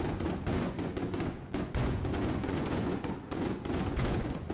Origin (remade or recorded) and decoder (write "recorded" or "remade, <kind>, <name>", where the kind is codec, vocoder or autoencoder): remade, vocoder, Vocos